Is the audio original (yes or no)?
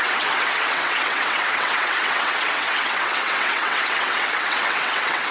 no